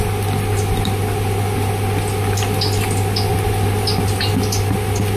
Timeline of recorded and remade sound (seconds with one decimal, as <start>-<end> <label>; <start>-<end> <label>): 0.0-5.2 recorded